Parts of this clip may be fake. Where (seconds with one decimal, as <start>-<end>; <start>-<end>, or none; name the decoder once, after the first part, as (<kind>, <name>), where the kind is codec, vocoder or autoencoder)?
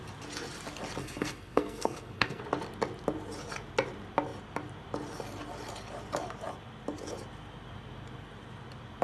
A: 1.0-2.4 (codec, SNAC)